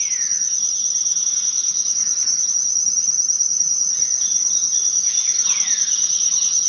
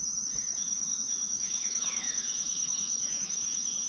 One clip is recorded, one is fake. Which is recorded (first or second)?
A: first